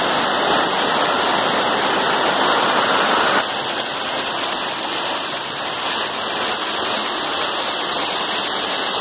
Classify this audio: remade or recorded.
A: recorded